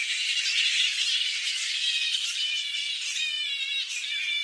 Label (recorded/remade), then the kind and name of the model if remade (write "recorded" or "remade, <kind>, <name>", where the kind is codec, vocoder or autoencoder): recorded